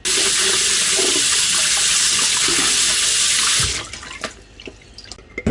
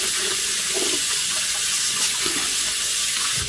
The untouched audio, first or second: first